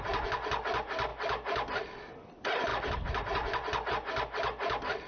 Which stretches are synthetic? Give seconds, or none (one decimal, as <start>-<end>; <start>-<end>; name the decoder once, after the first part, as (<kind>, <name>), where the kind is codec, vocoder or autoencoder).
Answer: none